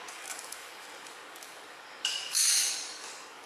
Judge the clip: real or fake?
fake